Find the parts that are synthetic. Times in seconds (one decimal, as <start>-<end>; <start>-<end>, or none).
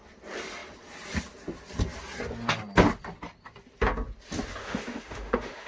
4.6-5.7